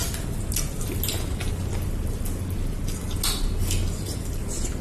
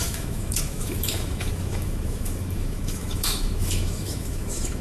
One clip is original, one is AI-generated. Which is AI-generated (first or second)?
second